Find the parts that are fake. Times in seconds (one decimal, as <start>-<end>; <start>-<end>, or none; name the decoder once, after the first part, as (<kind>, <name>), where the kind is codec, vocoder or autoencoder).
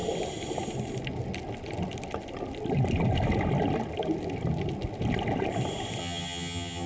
6.0-6.9 (vocoder, HiFi-GAN)